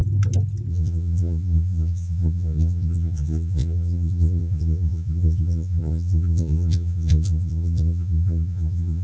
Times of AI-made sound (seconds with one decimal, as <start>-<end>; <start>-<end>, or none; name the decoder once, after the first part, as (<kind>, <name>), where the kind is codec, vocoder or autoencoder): 0.7-9.0 (vocoder, Vocos)